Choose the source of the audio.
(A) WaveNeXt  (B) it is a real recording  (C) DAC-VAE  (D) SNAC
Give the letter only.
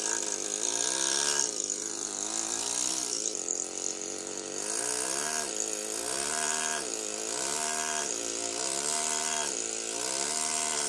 B